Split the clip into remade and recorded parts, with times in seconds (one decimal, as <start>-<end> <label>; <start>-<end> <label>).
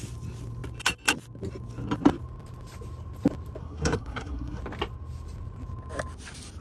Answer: 0.0-3.6 recorded; 3.6-4.6 remade; 4.6-6.6 recorded